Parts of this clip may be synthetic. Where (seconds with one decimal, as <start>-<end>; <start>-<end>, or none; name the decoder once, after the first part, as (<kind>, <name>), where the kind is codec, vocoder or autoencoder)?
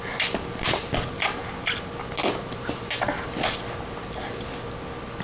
none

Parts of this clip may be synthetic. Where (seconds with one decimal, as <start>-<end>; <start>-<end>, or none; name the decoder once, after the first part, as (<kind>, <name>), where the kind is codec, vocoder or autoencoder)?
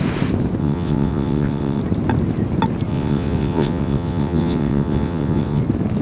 0.6-1.8 (vocoder, WaveNeXt); 2.9-5.6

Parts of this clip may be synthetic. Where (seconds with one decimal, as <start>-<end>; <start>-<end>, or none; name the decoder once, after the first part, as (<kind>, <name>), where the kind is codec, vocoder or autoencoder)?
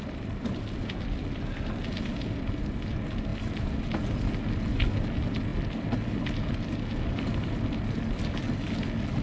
none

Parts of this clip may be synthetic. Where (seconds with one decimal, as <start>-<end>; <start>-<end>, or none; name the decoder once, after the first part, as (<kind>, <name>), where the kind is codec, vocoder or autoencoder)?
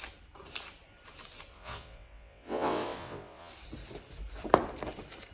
1.5-3.5 (vocoder, WaveNeXt)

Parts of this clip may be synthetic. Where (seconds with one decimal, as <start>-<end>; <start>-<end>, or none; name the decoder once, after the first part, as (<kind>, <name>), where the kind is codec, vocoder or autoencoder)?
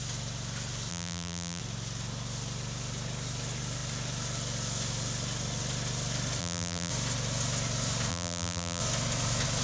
0.9-1.6 (vocoder, BigVGAN v2); 6.4-6.9; 8.1-8.8